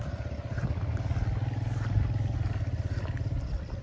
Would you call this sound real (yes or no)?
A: yes